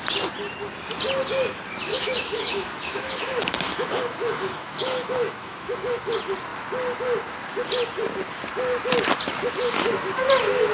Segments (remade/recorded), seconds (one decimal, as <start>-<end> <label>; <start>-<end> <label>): 0.0-1.9 recorded; 1.9-6.0 remade; 6.0-10.7 recorded